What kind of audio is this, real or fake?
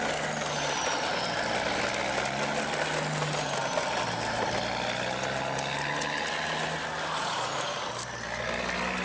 real